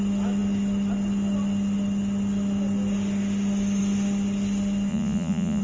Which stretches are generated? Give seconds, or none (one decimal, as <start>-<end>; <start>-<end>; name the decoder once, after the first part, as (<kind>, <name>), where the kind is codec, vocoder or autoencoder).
4.9-5.6 (vocoder, Vocos)